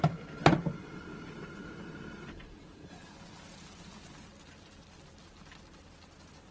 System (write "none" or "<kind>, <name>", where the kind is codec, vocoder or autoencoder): none